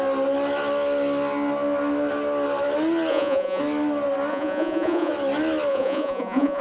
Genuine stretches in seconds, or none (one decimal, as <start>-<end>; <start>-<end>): 0.0-3.1; 3.6-4.3; 5.1-5.7